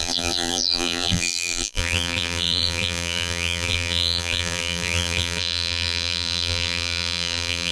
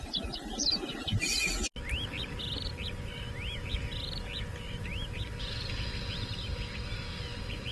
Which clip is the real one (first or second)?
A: second